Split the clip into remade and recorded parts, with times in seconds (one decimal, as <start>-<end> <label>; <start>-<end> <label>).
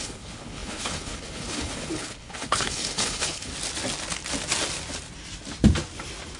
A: 0.0-3.5 remade; 3.5-6.4 recorded